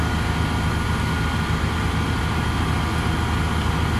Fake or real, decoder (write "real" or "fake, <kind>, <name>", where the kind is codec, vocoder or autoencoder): real